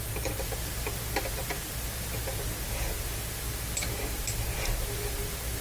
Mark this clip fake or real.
real